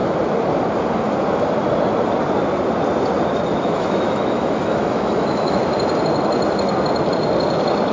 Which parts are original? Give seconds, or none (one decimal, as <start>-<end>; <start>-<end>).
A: 0.0-3.5; 5.6-7.9